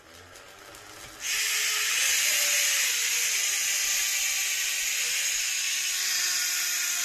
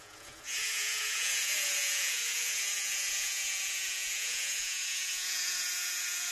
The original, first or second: first